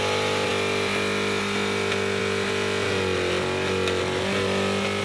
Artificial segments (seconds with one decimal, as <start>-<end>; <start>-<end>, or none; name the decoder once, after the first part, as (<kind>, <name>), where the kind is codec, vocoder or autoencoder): none